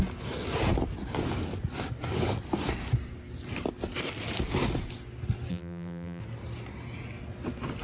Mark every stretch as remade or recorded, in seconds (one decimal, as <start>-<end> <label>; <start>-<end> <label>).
0.0-5.5 recorded; 5.5-6.2 remade; 6.2-7.8 recorded